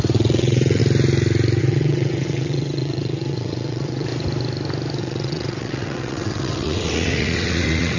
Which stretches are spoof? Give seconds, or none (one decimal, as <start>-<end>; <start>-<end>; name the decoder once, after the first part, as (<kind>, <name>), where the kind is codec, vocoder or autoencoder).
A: 0.0-0.8 (vocoder, WaveNeXt); 1.6-4.1; 5.0-8.0